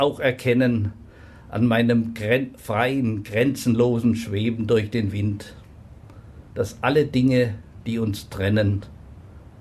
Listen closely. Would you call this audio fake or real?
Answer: real